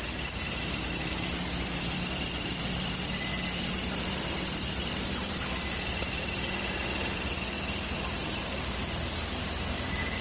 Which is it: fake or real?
fake